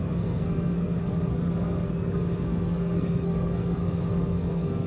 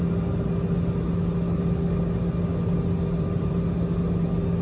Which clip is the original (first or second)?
second